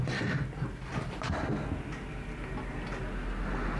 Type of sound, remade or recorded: recorded